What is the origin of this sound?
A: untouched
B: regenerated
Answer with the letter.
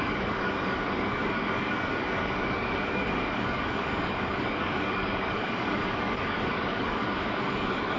B